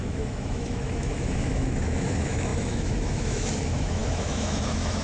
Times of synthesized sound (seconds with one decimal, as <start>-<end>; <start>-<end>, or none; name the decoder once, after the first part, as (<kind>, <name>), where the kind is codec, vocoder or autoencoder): 0.0-5.0 (autoencoder, DAC-VAE)